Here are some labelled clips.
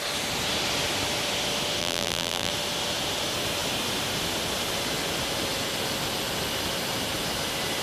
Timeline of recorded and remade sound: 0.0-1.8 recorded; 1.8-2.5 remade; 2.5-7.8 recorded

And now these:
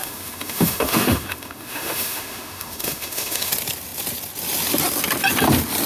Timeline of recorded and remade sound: 0.0-3.5 remade; 3.5-5.9 recorded

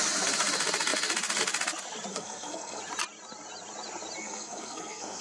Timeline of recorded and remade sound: 0.0-2.1 recorded; 2.1-2.8 remade; 2.8-4.2 recorded; 4.2-5.2 remade

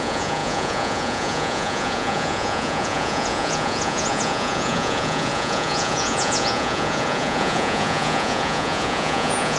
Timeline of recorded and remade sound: 0.0-9.6 remade

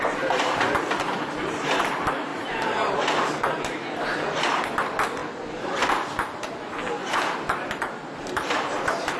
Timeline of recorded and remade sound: 0.0-2.3 recorded; 2.3-2.9 remade; 2.9-7.0 recorded; 7.0-9.2 remade

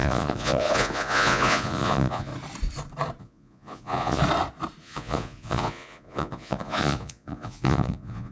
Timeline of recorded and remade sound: 0.0-2.3 remade; 2.3-3.2 recorded; 3.2-4.2 remade; 4.2-4.8 recorded; 4.8-8.3 remade

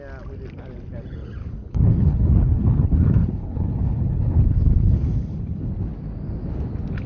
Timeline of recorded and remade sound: 0.0-1.4 recorded; 1.4-5.7 remade; 5.7-7.1 recorded

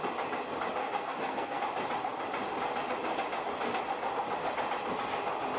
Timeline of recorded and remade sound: 0.0-0.8 recorded; 0.8-1.6 remade; 1.6-5.6 recorded